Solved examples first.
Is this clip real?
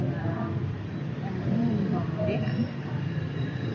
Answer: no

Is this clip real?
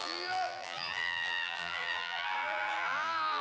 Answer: no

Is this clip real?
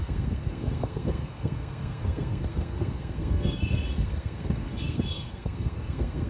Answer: no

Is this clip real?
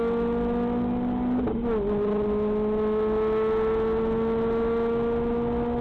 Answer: yes